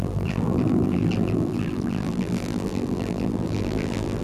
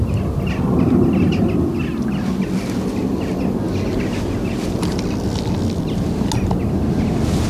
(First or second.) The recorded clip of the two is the second